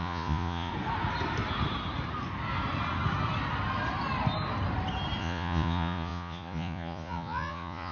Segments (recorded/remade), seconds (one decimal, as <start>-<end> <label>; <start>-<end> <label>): 0.0-0.7 remade; 0.7-5.2 recorded; 5.2-7.9 remade